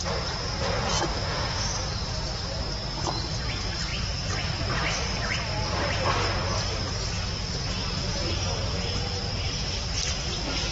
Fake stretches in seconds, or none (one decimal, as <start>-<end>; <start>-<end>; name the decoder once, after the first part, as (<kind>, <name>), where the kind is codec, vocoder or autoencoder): 1.1-1.7 (autoencoder, DAC-VAE)